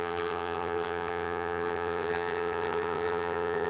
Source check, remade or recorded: remade